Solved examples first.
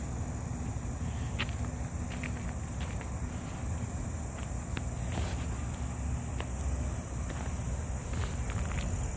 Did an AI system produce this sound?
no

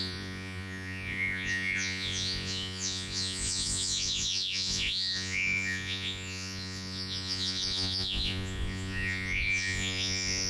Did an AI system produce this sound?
yes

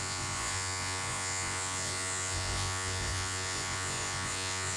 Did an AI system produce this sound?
yes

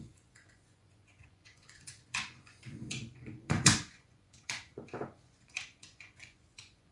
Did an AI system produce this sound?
yes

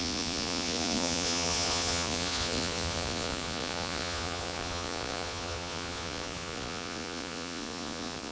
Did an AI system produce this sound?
yes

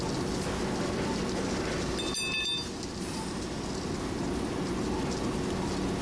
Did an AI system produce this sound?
no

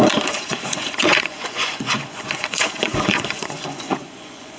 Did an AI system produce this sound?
yes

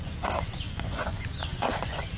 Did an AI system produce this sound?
yes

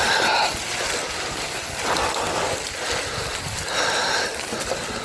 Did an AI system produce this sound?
no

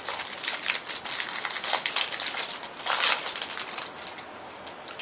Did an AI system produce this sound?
no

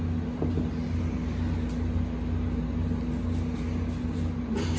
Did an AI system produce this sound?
no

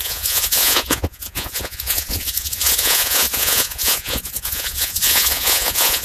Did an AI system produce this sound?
yes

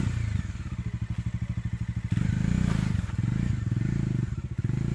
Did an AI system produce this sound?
no